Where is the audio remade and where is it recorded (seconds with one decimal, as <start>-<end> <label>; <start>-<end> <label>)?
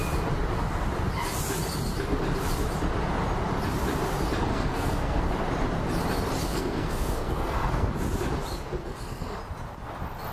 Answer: 0.0-4.5 recorded; 4.5-5.3 remade; 5.3-6.5 recorded; 6.5-7.9 remade; 7.9-8.8 recorded; 8.8-9.4 remade; 9.4-10.3 recorded